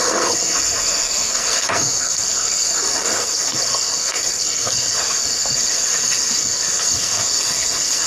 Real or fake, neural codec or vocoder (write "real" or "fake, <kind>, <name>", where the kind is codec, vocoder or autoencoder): fake, codec, SNAC